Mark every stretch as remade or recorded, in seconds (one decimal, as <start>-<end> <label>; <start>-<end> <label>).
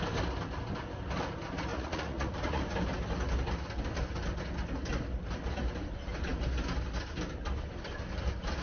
0.0-1.7 recorded; 1.7-2.6 remade; 2.6-8.6 recorded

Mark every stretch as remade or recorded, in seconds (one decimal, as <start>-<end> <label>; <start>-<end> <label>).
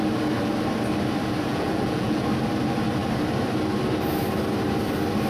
0.0-1.5 recorded; 1.5-2.2 remade; 2.2-5.3 recorded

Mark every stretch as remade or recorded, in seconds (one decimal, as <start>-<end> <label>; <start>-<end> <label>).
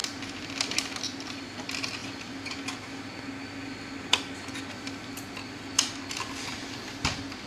0.0-7.5 recorded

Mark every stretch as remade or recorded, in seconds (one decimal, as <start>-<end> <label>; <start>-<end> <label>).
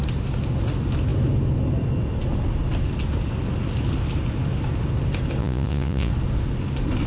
0.0-5.4 recorded; 5.4-6.1 remade; 6.1-7.1 recorded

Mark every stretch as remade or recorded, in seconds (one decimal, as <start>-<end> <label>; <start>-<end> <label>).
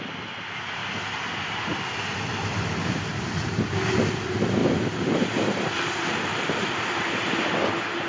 0.0-4.6 recorded; 4.6-7.5 remade; 7.5-8.1 recorded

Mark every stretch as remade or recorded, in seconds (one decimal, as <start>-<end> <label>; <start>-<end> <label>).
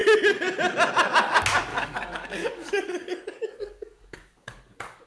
0.0-1.7 recorded; 1.7-5.1 remade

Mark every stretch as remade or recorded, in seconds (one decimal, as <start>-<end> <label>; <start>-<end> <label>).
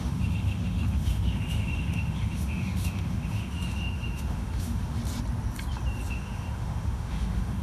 0.0-5.0 remade; 5.0-6.1 recorded; 6.1-7.6 remade